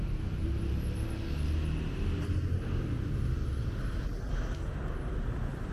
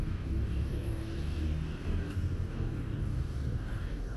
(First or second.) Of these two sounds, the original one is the first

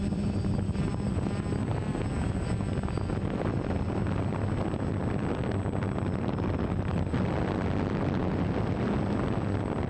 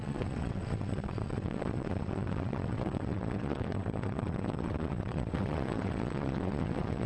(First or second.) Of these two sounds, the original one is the first